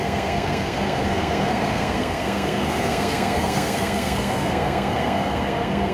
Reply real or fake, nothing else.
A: fake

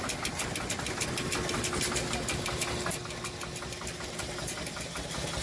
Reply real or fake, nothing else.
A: real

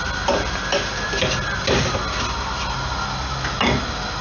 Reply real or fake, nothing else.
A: real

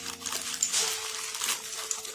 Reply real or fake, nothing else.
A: real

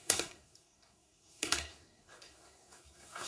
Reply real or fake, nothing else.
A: fake